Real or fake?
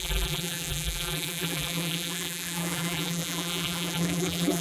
fake